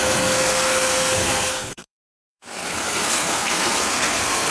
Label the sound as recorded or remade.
remade